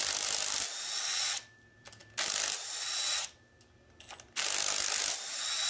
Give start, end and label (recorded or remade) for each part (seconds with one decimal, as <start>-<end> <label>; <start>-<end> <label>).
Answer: 0.0-5.7 recorded